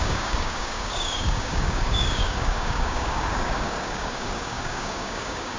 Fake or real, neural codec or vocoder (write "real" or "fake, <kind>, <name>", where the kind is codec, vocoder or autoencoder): fake, codec, DAC